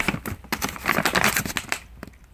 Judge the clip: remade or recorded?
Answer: recorded